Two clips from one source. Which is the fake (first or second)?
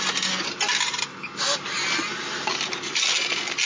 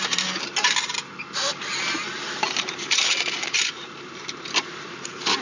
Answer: second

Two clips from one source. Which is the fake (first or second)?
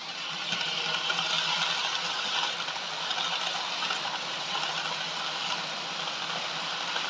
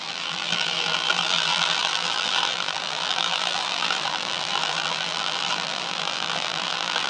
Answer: second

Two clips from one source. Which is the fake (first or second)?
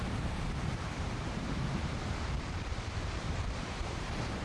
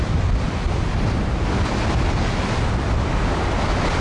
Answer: first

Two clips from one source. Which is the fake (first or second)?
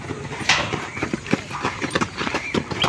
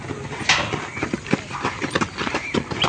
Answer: first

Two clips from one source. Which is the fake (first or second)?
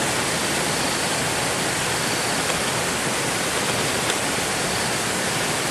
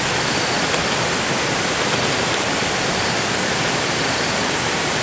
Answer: second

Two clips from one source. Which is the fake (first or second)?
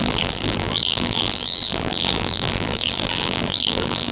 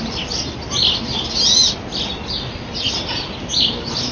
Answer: first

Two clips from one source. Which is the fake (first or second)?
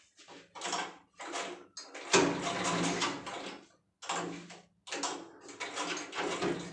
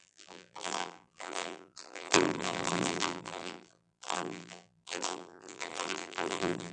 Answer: second